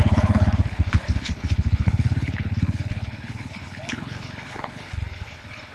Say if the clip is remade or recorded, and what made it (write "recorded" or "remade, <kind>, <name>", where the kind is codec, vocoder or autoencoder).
remade, codec, HILCodec